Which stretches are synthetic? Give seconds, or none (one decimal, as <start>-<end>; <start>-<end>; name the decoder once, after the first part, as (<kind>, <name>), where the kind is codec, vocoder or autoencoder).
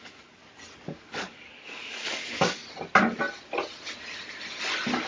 0.0-0.4 (codec, DAC); 0.9-2.6